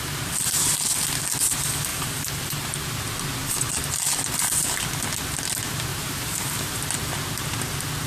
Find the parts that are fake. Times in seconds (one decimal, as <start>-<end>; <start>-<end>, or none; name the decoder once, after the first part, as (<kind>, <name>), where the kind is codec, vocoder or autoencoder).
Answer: 1.9-2.8 (vocoder, BigVGAN v2); 5.9-6.8